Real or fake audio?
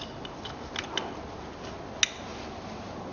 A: real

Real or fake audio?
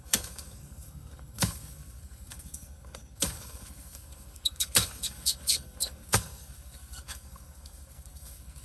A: fake